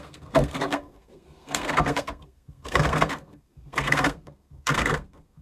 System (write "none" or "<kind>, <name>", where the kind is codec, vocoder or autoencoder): codec, SNAC